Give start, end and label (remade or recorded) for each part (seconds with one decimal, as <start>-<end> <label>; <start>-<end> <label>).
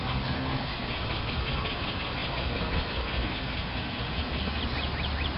0.0-4.6 remade; 4.6-5.4 recorded